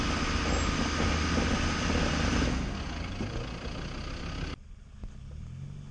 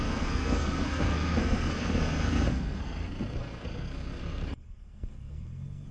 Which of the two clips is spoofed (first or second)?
second